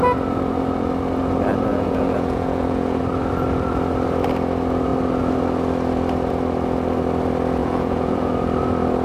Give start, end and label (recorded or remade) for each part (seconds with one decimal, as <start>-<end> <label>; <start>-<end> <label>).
0.0-1.7 recorded; 1.7-3.0 remade; 3.0-7.6 recorded; 7.6-8.3 remade; 8.3-9.0 recorded